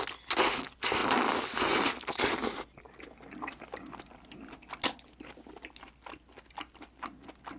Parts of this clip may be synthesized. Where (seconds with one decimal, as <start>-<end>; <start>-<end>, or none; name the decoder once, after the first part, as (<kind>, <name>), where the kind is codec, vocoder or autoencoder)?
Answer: none